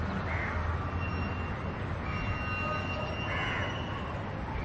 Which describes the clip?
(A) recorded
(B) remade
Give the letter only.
A